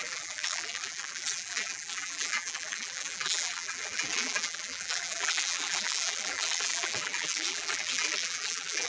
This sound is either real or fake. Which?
fake